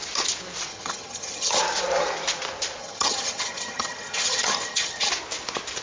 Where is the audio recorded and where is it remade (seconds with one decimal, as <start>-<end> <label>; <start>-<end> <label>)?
0.0-0.7 recorded; 0.7-1.6 remade; 1.6-2.8 recorded; 2.8-5.1 remade; 5.1-5.8 recorded